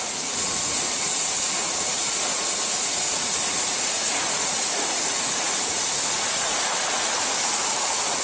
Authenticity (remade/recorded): remade